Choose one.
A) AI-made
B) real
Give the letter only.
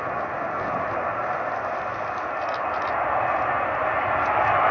B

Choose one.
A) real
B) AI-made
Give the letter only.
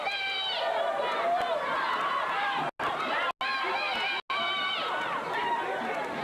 A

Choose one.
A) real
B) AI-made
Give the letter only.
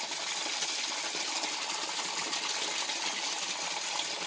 A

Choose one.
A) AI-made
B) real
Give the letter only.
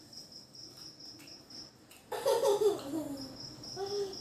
B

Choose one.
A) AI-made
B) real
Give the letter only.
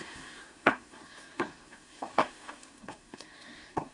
A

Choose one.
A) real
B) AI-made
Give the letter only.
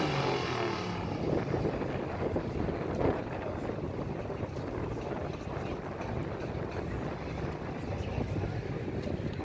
A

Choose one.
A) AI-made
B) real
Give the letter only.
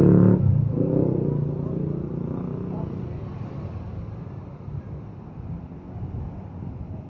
B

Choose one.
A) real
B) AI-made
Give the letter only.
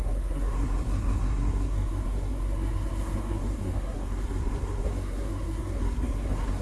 B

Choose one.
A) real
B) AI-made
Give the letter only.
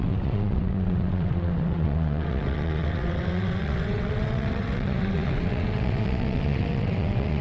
B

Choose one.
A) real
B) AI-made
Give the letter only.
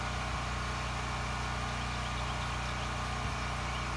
A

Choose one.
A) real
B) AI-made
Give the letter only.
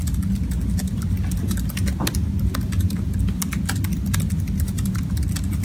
A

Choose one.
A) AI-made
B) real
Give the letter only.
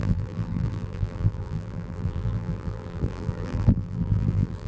A